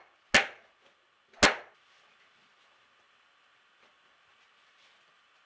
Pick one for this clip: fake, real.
real